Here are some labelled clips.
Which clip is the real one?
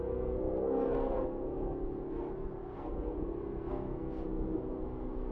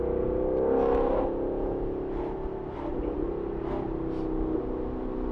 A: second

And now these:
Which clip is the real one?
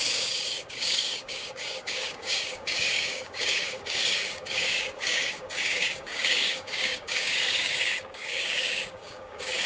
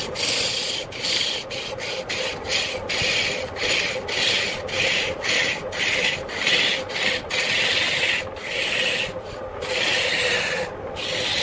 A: second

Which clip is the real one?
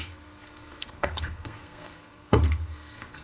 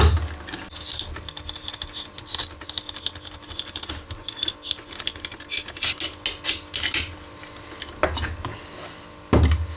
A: second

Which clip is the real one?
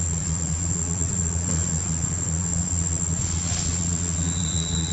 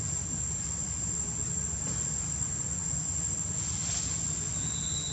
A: second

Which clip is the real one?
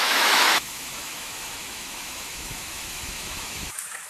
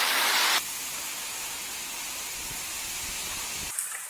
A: second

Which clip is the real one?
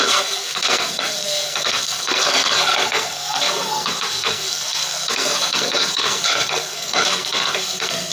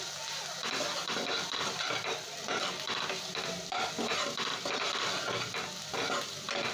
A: second